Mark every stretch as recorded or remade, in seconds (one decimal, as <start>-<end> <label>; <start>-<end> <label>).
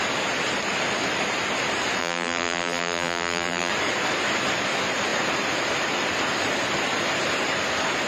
0.0-2.0 recorded; 2.0-3.7 remade; 3.7-8.1 recorded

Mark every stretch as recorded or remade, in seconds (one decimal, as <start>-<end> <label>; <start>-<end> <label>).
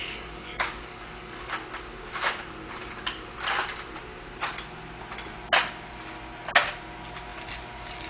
0.0-1.5 remade; 1.5-8.1 recorded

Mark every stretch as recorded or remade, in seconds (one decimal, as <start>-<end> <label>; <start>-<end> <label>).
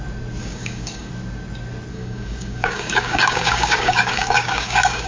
0.0-0.4 recorded; 0.4-1.1 remade; 1.1-1.9 recorded; 1.9-5.1 remade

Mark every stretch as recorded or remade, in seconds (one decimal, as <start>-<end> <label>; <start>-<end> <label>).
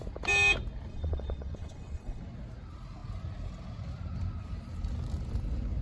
0.0-0.9 recorded; 0.9-2.2 remade; 2.2-5.8 recorded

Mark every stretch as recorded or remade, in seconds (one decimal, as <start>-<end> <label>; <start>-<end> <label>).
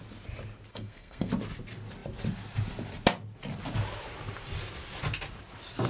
0.0-0.7 recorded; 0.7-1.3 remade; 1.3-5.9 recorded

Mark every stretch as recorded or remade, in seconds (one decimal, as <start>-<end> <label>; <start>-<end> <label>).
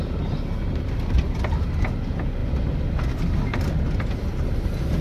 0.0-2.4 recorded; 2.4-4.1 remade; 4.1-5.0 recorded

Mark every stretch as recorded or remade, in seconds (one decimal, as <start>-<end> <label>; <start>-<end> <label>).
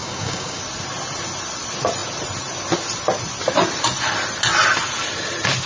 0.0-0.6 remade; 0.6-5.7 recorded